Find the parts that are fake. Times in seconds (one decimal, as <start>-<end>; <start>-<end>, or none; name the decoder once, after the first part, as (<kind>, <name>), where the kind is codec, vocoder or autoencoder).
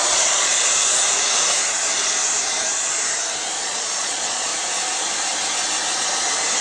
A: 0.0-0.5 (vocoder, Vocos); 3.6-4.5